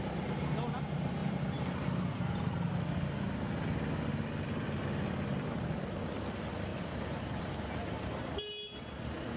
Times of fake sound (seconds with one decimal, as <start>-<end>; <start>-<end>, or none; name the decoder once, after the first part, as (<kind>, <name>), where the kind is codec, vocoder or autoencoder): 6.7-7.4 (vocoder, BigVGAN v2)